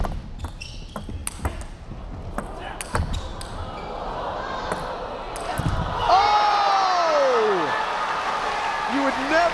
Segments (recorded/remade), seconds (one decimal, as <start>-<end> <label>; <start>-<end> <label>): 0.0-9.5 recorded